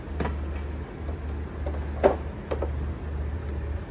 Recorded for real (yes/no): yes